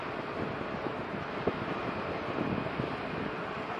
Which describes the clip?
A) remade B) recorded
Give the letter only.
B